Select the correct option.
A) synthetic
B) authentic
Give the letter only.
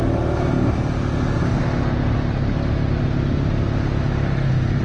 B